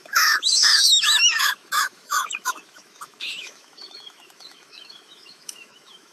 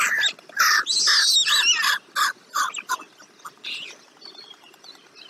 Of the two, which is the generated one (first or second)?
first